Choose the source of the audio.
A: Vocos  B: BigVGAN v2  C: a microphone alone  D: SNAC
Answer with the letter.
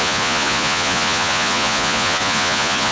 A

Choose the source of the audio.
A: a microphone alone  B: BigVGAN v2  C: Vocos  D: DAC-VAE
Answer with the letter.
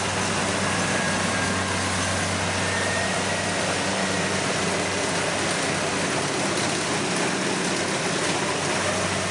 A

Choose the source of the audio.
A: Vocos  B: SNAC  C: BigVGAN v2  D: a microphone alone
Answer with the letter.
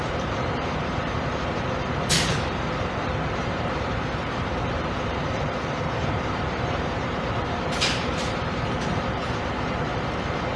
C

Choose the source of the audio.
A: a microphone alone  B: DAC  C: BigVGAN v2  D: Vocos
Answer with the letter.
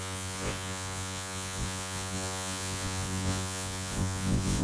D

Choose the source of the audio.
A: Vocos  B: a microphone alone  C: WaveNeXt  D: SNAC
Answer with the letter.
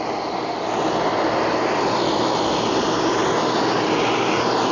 B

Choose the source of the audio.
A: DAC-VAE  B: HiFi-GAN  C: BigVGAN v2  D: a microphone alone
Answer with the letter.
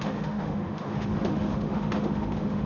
A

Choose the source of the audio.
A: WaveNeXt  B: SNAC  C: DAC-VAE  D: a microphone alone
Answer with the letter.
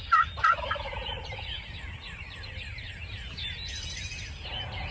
D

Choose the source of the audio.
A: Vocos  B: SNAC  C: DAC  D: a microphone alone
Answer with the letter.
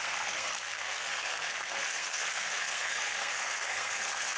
B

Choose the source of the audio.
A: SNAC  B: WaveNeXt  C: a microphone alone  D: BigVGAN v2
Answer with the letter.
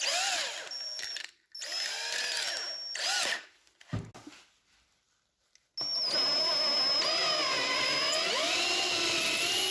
C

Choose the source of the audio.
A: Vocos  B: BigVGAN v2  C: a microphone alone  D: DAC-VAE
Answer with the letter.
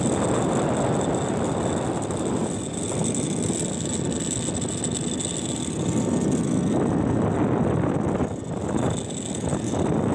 C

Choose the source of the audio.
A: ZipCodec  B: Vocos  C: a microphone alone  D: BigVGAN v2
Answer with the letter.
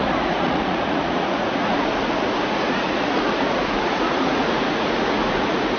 B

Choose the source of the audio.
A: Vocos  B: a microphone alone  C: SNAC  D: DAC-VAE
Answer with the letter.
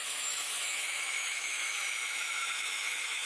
D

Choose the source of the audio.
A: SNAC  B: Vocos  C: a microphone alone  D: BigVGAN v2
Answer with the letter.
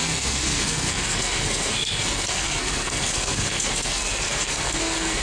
A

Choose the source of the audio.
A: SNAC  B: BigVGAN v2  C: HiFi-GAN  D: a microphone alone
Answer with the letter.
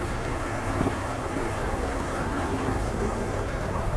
A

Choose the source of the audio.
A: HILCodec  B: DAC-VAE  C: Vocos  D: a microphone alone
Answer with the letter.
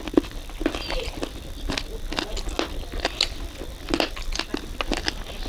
D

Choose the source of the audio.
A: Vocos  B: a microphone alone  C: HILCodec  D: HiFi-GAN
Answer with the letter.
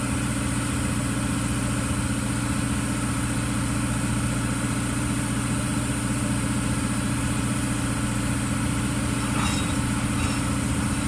B